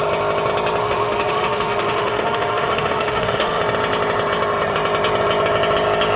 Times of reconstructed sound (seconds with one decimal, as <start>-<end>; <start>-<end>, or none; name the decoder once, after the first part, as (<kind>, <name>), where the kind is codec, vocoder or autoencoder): 0.8-3.6 (autoencoder, DAC-VAE)